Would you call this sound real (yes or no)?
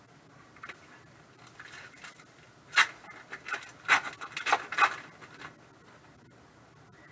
yes